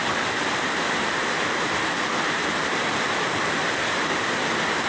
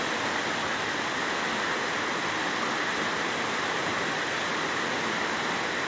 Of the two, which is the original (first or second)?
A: second